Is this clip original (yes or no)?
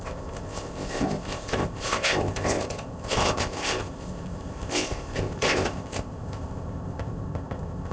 no